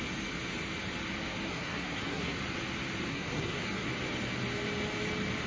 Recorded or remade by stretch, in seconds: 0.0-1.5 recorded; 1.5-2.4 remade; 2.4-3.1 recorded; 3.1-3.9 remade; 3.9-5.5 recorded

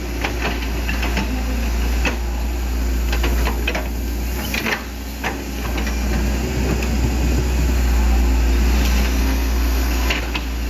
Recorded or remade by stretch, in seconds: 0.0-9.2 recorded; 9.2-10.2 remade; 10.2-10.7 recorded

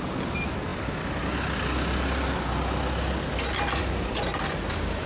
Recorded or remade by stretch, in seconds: 0.0-5.1 recorded

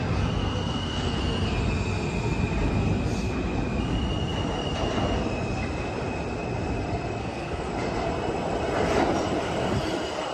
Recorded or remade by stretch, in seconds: 0.0-0.4 recorded; 0.4-1.2 remade; 1.2-7.2 recorded; 7.2-7.7 remade; 7.7-10.3 recorded

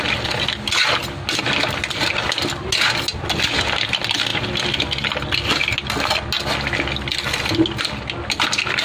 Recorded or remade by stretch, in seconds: 0.0-8.8 recorded

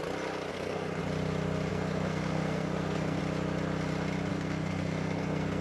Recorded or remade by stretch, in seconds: 0.0-0.5 recorded; 0.5-1.0 remade; 1.0-1.7 recorded; 1.7-3.2 remade; 3.2-4.3 recorded; 4.3-5.6 remade

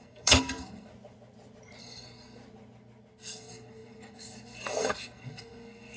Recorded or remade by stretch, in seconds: 0.0-0.9 remade; 0.9-1.8 recorded; 1.8-2.4 remade; 2.4-3.2 recorded; 3.2-6.0 remade